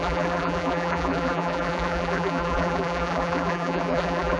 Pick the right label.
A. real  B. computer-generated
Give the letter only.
B